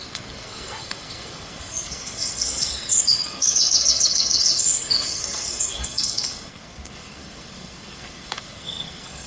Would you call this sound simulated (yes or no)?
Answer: yes